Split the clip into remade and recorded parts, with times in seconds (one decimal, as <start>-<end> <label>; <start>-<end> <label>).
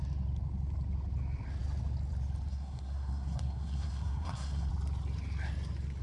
0.0-2.5 recorded; 2.5-4.7 remade; 4.7-6.0 recorded